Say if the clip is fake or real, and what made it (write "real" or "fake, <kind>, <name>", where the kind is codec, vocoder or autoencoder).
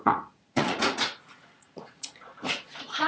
fake, vocoder, Vocos